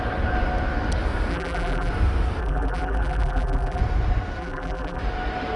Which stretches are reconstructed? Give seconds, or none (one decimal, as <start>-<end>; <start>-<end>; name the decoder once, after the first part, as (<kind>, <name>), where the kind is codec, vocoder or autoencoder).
1.3-1.9 (vocoder, BigVGAN v2); 2.4-3.8; 4.4-5.0